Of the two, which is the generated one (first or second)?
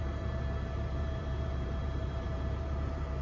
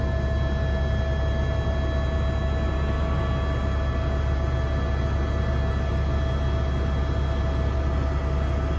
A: first